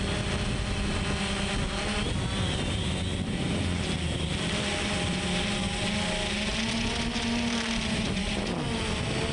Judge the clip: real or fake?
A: real